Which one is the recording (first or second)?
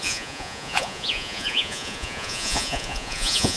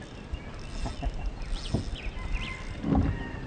second